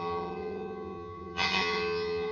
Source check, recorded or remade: remade